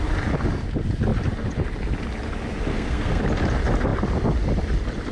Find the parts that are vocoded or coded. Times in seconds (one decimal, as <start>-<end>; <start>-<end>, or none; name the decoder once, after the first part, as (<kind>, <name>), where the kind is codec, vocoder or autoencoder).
2.7-3.2 (codec, SNAC)